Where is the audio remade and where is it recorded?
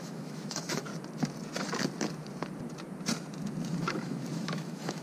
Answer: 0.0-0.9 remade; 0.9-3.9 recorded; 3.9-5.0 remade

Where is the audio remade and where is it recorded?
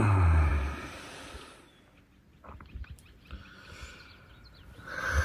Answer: 0.0-5.2 recorded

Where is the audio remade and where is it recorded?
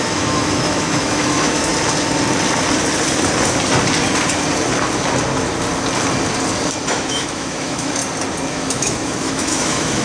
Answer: 0.0-1.7 remade; 1.7-6.9 recorded; 6.9-8.0 remade; 8.0-8.5 recorded; 8.5-10.0 remade